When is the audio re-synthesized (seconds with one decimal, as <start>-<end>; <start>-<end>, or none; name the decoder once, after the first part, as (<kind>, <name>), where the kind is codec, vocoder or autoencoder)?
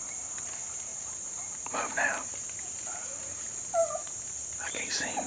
0.9-4.1 (vocoder, BigVGAN v2)